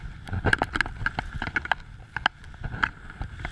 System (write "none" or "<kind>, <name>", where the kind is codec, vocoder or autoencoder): none